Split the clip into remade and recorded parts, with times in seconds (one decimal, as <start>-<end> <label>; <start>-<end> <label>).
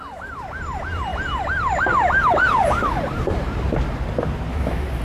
0.0-4.5 recorded; 4.5-5.0 remade